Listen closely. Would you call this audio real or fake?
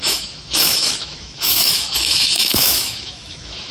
fake